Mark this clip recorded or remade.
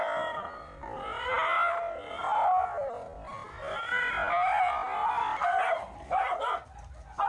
recorded